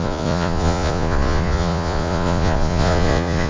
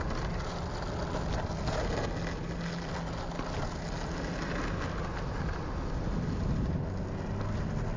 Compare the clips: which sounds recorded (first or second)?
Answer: second